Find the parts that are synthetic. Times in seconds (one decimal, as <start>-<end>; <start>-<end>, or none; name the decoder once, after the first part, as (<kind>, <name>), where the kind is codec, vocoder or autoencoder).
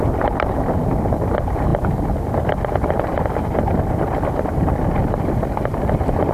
none